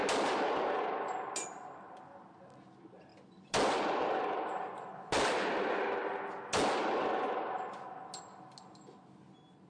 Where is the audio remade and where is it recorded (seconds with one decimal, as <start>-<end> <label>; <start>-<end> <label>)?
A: 0.0-9.7 recorded